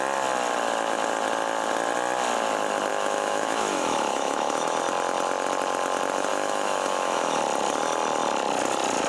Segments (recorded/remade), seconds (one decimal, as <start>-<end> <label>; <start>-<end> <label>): 0.0-2.9 recorded; 2.9-4.8 remade; 4.8-6.3 recorded; 6.3-7.4 remade; 7.4-9.1 recorded